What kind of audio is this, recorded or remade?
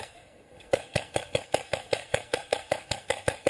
remade